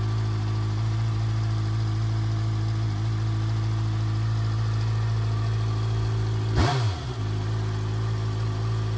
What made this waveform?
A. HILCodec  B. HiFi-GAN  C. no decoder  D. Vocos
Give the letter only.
C